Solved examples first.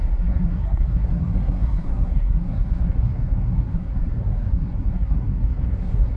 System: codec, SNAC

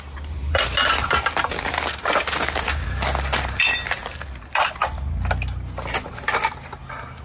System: none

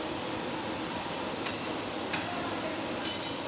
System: none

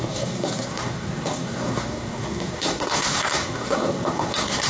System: codec, SNAC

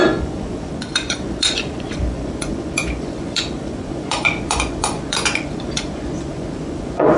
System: vocoder, Vocos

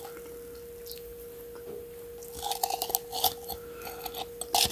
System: none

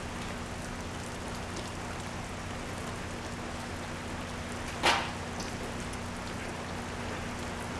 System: none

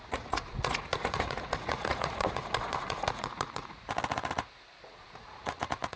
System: vocoder, Vocos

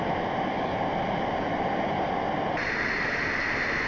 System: none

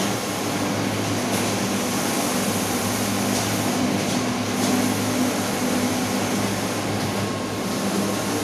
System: none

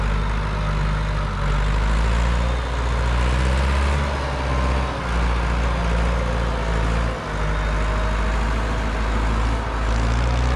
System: none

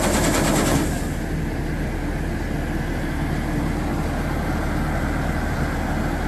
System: none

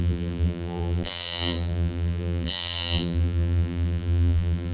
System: vocoder, BigVGAN v2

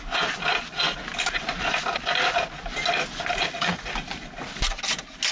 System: none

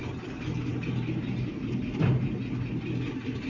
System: none